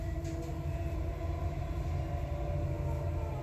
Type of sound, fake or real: real